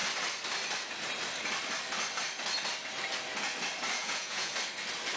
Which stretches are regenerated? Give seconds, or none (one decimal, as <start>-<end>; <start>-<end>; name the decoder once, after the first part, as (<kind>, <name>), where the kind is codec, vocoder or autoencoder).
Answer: 4.0-4.5 (vocoder, Vocos)